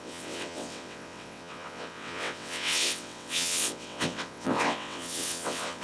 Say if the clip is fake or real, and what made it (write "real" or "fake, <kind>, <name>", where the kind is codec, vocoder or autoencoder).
fake, vocoder, WaveNeXt